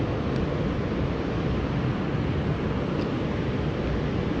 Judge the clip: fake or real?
real